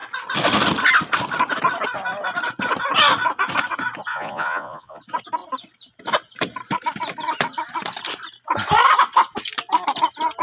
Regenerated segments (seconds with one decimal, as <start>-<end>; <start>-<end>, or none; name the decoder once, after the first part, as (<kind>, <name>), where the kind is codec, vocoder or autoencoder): 4.1-5.0 (vocoder, Vocos)